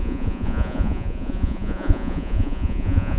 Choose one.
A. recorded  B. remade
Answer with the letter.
B